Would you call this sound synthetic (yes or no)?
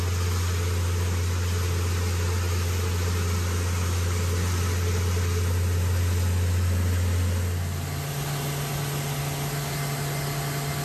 no